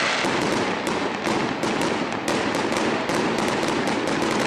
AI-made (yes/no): no